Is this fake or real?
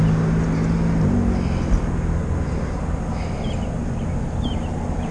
real